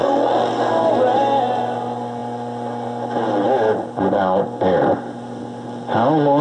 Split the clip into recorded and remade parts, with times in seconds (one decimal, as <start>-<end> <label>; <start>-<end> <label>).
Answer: 0.0-6.4 recorded